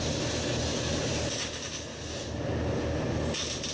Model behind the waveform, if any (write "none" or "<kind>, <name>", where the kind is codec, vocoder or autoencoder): none